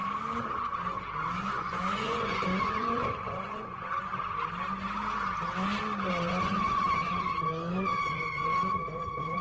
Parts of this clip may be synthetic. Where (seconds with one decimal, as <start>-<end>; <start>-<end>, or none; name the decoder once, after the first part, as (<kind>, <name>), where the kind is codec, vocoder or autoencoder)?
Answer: 1.5-4.1 (vocoder, Vocos); 6.1-9.4